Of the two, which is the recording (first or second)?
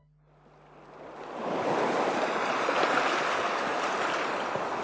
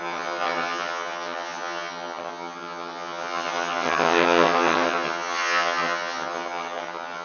first